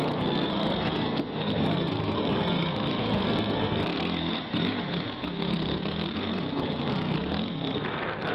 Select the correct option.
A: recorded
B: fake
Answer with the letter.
B